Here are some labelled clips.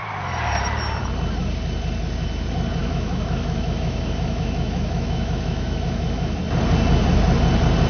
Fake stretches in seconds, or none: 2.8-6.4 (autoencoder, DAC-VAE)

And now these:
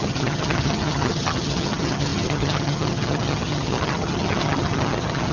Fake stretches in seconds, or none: 0.0-5.3 (vocoder, HiFi-GAN)

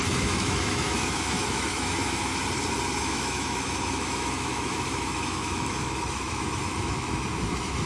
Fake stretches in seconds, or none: 0.0-2.3 (autoencoder, DAC-VAE); 3.0-7.9

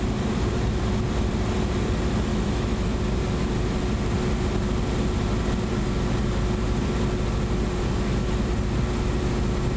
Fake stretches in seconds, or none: 2.3-2.9 (autoencoder, DAC-VAE)

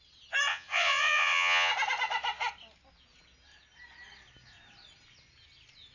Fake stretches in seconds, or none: 0.5-1.7 (vocoder, Vocos)

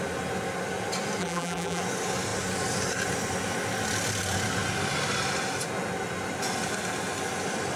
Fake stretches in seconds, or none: 1.2-1.8 (vocoder, BigVGAN v2)

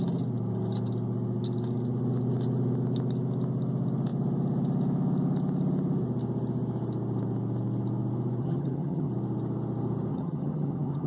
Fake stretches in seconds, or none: 8.4-9.1 (vocoder, HiFi-GAN); 10.1-11.1

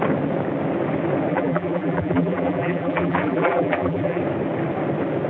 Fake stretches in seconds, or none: 1.3-4.2 (vocoder, BigVGAN v2)